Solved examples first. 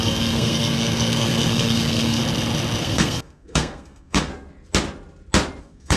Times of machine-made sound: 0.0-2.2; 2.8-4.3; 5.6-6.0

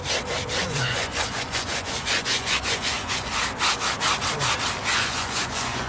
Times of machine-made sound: 0.6-3.3; 4.9-5.9

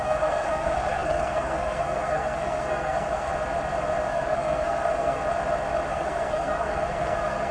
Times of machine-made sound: 0.0-3.3; 4.1-5.2; 5.9-7.5

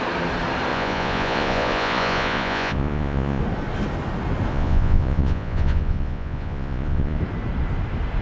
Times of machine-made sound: 0.7-3.4; 4.5-7.2

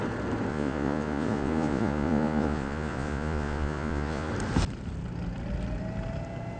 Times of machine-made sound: 0.5-4.3

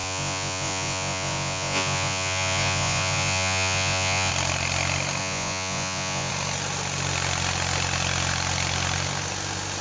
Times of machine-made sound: 0.0-4.3; 5.2-6.3

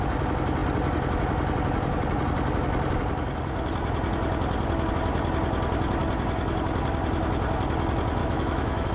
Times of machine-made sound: 8.2-8.9